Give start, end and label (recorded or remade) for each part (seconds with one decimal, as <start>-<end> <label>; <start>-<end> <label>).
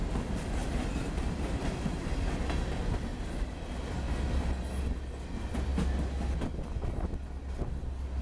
0.0-0.6 recorded; 0.6-1.9 remade; 1.9-3.1 recorded; 3.1-3.6 remade; 3.6-8.2 recorded